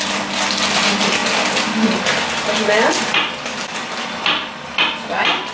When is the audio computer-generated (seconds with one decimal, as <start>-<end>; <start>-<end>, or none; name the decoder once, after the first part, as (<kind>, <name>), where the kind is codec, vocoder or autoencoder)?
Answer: none

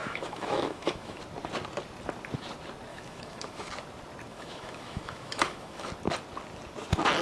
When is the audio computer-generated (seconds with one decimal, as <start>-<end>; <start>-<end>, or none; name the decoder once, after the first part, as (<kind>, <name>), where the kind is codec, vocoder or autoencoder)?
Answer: 0.0-1.2 (autoencoder, DAC-VAE); 2.9-3.7; 4.3-5.9

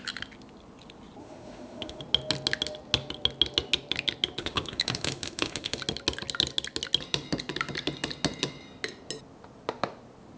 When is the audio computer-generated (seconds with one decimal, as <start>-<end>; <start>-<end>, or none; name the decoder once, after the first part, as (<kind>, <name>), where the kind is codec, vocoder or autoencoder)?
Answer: 1.2-2.0 (autoencoder, DAC-VAE); 4.4-5.8

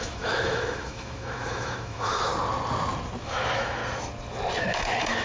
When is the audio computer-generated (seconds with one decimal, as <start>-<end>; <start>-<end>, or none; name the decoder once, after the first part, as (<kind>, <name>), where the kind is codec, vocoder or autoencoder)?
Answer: 0.0-2.3 (autoencoder, DAC-VAE); 3.2-3.8; 4.6-5.2

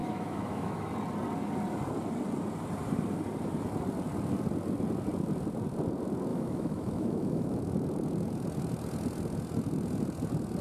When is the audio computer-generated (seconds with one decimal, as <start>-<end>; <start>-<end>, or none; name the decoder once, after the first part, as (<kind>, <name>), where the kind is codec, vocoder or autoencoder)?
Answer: 0.0-0.9 (autoencoder, DAC-VAE); 6.3-7.6